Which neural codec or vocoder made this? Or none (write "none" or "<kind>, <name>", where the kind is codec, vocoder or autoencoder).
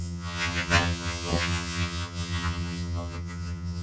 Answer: vocoder, HiFi-GAN